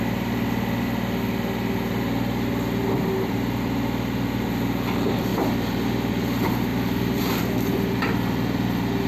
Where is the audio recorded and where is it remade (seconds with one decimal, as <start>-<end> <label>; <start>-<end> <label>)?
0.0-6.7 recorded; 6.7-7.4 remade; 7.4-9.1 recorded